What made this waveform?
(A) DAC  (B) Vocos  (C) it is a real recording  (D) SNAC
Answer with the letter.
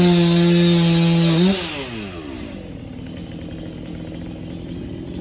C